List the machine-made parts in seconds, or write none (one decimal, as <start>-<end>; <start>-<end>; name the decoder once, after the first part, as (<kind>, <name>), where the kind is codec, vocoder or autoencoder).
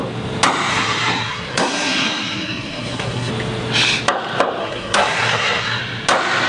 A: 0.7-3.3 (codec, SNAC); 4.6-5.8